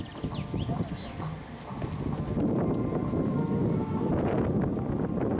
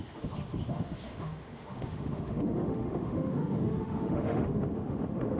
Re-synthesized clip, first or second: second